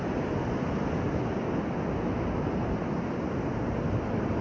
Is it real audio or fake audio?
real